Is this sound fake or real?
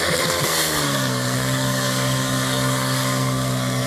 fake